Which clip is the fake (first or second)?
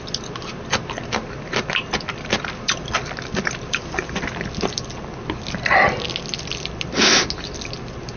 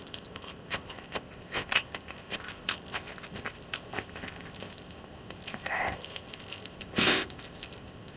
second